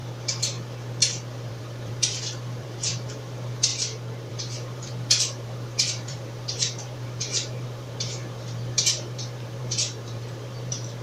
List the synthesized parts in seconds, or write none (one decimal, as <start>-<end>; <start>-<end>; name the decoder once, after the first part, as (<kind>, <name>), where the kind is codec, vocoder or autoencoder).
1.5-3.7 (vocoder, BigVGAN v2); 4.3-11.0